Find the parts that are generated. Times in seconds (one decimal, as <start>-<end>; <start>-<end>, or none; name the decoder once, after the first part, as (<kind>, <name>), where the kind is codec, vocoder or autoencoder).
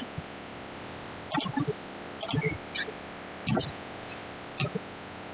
0.0-0.5 (vocoder, Vocos); 3.7-4.2; 4.7-5.3